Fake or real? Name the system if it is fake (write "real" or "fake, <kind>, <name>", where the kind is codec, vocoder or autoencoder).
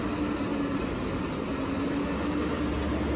real